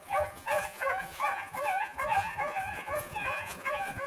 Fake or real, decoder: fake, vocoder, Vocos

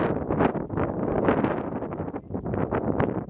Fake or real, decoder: real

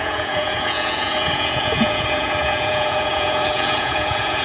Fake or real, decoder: fake, vocoder, Vocos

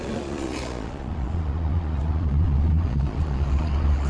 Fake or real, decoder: fake, vocoder, Vocos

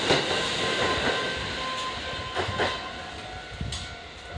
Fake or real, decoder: real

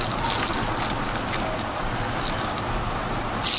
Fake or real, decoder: real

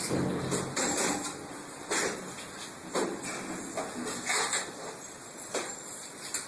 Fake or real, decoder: real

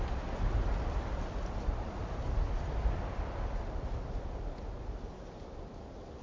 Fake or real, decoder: real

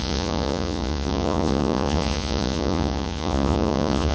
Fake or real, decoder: fake, vocoder, Vocos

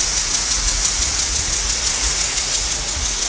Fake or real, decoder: fake, vocoder, Vocos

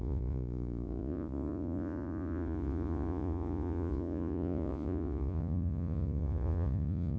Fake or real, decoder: fake, vocoder, Vocos